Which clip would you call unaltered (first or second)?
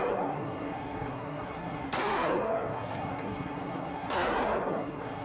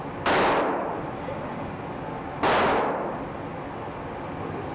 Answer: second